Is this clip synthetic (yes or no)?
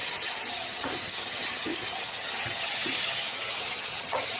yes